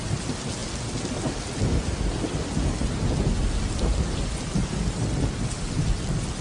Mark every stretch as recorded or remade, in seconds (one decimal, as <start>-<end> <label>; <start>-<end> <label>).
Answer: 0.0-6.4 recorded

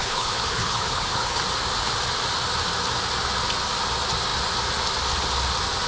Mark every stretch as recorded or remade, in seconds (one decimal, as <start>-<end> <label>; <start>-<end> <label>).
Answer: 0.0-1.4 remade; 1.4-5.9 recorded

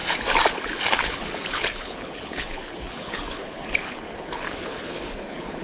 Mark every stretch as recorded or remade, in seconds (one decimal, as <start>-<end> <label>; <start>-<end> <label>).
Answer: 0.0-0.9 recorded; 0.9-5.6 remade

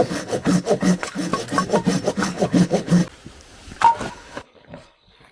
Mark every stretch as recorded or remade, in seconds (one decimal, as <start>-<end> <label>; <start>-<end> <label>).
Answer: 0.0-1.3 remade; 1.3-2.1 recorded; 2.1-3.0 remade; 3.0-4.1 recorded; 4.1-5.3 remade

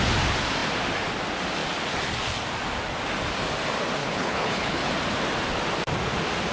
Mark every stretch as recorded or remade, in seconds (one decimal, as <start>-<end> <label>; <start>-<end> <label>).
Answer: 0.0-4.0 recorded; 4.0-4.9 remade; 4.9-6.5 recorded

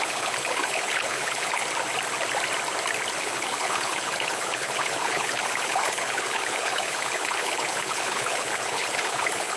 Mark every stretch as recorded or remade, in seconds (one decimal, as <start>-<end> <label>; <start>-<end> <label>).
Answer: 0.0-1.6 remade; 1.6-3.2 recorded; 3.2-9.6 remade